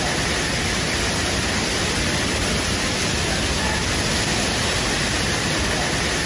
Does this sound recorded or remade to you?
recorded